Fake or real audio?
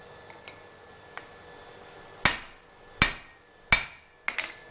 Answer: real